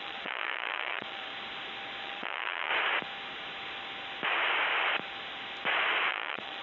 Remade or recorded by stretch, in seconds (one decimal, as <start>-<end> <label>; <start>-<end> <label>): 0.0-1.3 remade; 1.3-2.0 recorded; 2.0-2.7 remade; 2.7-6.1 recorded; 6.1-6.6 remade